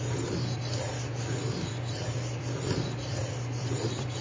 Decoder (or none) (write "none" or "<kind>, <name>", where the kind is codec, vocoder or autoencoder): vocoder, BigVGAN v2